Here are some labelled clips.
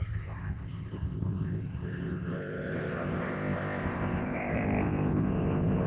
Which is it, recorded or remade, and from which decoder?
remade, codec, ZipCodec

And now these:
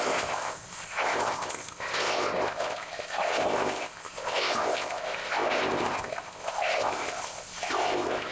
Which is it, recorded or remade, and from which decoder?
remade, codec, ZipCodec